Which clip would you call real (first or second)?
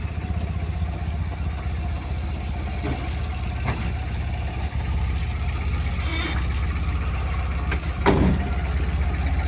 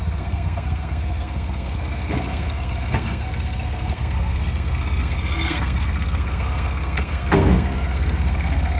first